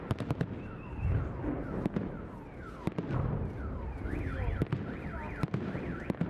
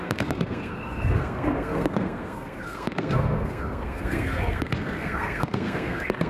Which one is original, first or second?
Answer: first